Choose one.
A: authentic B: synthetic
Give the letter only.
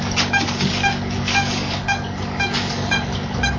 B